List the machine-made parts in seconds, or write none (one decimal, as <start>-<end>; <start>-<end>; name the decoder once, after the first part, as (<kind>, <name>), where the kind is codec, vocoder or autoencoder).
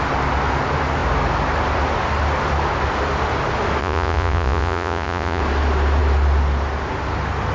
3.8-5.4 (vocoder, Vocos)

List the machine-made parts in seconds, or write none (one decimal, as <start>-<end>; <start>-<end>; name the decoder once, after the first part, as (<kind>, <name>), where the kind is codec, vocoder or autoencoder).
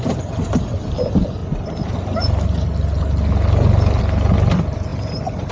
none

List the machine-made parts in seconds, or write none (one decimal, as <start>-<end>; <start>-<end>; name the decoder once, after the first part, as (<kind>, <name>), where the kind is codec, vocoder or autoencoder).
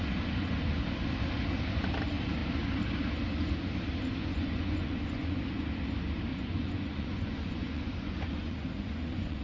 4.2-5.4 (vocoder, Vocos); 6.3-9.4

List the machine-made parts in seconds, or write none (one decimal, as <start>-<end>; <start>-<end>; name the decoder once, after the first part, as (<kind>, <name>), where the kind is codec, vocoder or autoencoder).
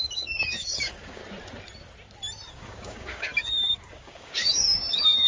0.0-1.2 (codec, DAC); 2.5-5.3